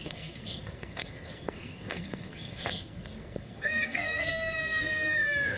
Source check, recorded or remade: remade